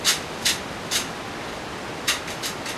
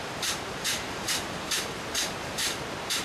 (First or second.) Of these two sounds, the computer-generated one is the second